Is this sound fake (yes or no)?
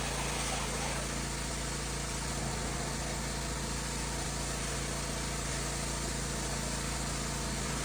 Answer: no